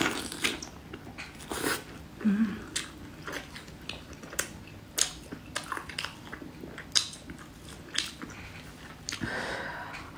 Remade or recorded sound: recorded